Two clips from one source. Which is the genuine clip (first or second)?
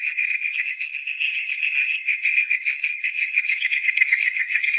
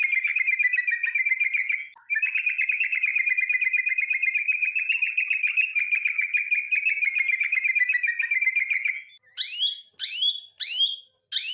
second